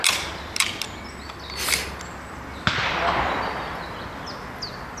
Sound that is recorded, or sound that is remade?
recorded